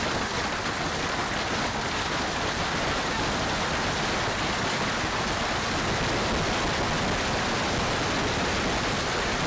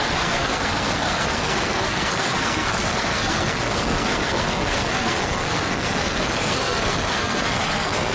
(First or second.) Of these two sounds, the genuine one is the first